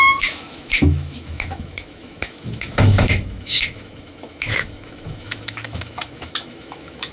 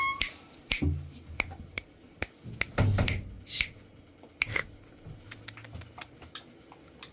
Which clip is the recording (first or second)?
second